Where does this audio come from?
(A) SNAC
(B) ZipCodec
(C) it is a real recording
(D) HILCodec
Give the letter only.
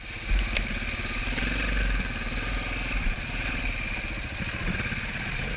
C